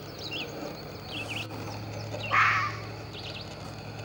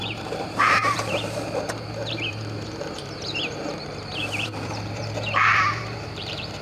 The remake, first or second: second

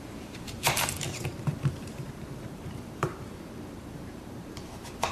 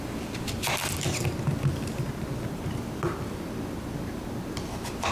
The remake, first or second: first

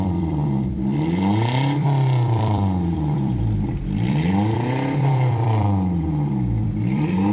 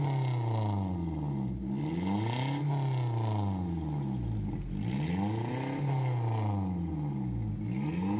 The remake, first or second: first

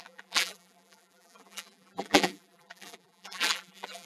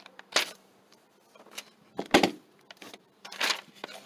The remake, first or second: first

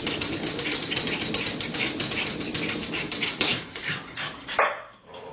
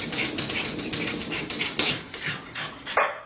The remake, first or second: first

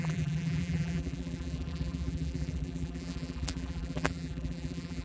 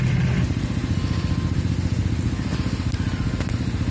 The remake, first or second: first